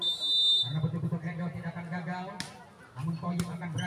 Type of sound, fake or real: real